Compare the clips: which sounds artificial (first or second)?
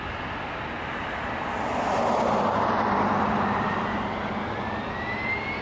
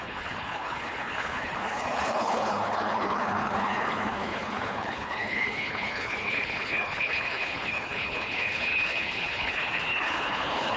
second